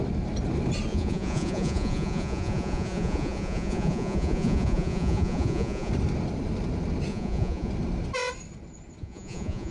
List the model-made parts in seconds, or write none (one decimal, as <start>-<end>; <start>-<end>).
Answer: 0.9-5.9; 7.1-7.7; 9.0-9.7